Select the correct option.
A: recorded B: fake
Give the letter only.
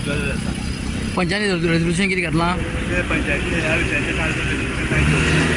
A